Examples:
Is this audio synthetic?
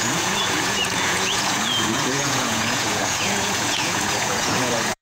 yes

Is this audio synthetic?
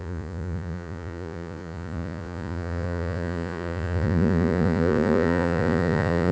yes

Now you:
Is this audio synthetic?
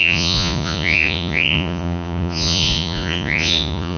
yes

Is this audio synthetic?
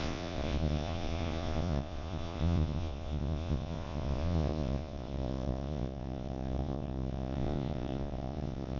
yes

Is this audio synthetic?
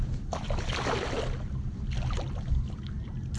no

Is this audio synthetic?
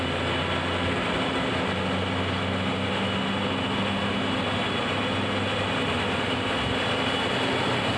no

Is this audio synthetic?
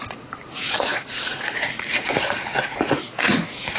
yes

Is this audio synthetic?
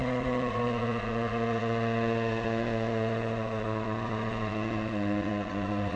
yes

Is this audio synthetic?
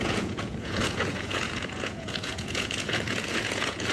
yes